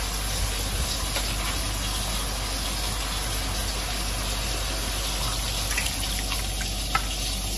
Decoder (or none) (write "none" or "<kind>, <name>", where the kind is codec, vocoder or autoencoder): none